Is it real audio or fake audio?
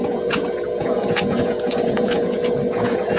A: fake